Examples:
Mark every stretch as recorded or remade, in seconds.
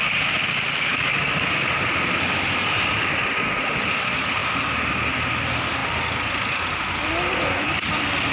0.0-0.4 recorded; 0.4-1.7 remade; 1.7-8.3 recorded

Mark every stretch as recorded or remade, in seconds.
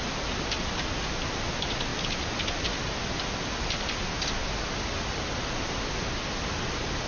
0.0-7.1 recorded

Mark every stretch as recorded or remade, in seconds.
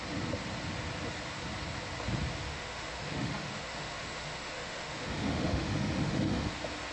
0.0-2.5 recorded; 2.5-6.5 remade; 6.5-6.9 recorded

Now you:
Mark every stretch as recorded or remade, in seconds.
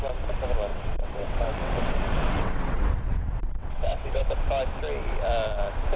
0.0-0.7 recorded; 0.7-4.3 remade; 4.3-6.0 recorded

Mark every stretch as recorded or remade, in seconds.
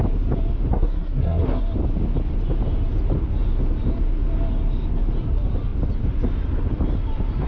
0.0-0.7 recorded; 0.7-1.6 remade; 1.6-7.5 recorded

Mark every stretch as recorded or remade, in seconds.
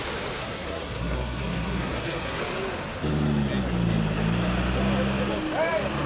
0.0-0.4 recorded; 0.4-2.4 remade; 2.4-6.1 recorded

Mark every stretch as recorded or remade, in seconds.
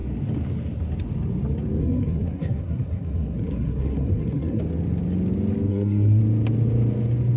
0.0-1.8 recorded; 1.8-4.6 remade; 4.6-5.7 recorded; 5.7-6.2 remade; 6.2-7.4 recorded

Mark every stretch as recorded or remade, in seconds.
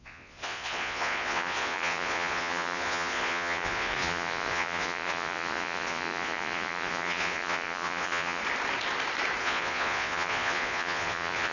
0.0-8.4 remade; 8.4-9.4 recorded; 9.4-11.5 remade